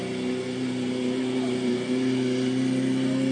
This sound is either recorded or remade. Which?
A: recorded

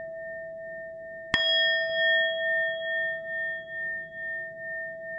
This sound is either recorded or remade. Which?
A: recorded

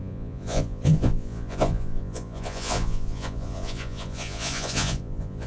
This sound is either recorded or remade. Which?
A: remade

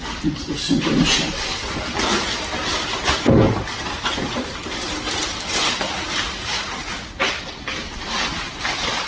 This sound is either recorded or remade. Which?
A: recorded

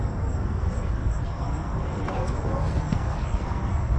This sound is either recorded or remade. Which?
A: remade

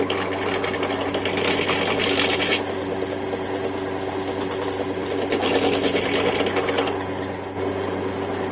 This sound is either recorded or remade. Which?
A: recorded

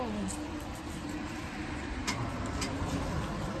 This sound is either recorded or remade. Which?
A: recorded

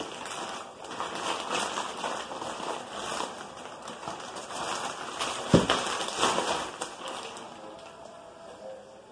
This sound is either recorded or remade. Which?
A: recorded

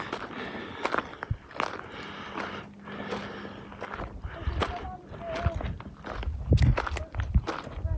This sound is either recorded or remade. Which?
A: recorded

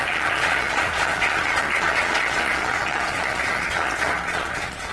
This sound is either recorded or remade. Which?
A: remade